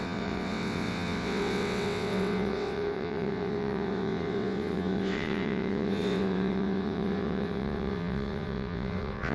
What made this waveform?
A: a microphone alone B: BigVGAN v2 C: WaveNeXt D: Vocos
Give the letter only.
C